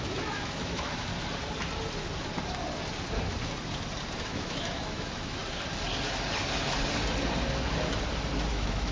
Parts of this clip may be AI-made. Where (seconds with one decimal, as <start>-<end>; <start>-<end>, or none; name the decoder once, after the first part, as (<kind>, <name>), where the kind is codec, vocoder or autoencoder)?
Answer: 0.0-1.1 (autoencoder, DAC-VAE); 4.2-5.4; 8.5-8.9